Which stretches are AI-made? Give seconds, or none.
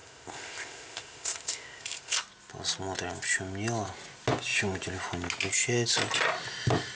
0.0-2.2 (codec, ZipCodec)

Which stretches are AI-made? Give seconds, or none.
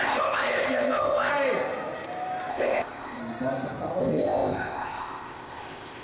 0.0-1.3 (codec, ZipCodec); 2.5-3.2; 4.0-6.0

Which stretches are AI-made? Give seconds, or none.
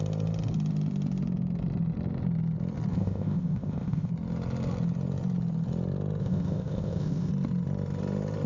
2.9-4.1 (codec, ZipCodec); 6.2-7.3